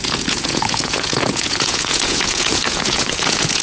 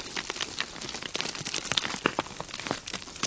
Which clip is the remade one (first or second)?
first